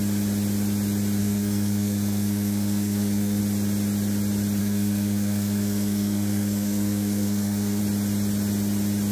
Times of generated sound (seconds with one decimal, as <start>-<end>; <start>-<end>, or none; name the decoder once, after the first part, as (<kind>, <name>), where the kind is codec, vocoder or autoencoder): 1.2-3.4 (codec, SNAC); 4.6-7.8